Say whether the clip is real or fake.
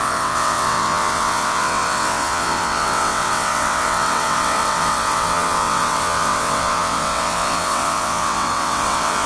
fake